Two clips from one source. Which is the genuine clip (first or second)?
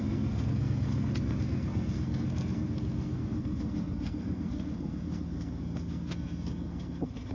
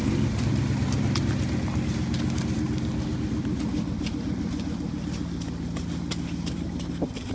second